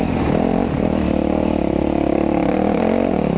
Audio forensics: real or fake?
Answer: real